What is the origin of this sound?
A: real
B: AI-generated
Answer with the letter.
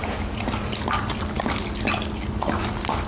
A